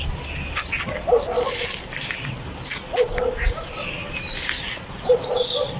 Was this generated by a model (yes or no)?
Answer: no